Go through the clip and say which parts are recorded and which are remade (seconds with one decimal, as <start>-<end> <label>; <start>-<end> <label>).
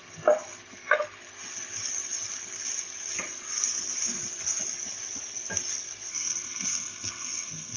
0.0-6.1 recorded; 6.1-7.8 remade